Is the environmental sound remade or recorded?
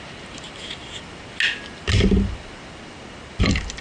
recorded